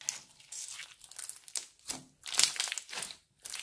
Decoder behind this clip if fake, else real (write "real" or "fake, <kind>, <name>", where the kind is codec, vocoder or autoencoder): real